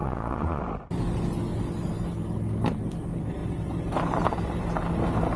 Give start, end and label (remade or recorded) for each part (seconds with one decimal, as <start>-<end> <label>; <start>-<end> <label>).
0.0-0.6 remade; 0.6-5.4 recorded